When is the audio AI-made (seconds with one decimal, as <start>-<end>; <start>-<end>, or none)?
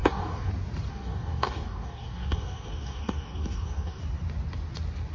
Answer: 0.0-0.5; 0.9-4.0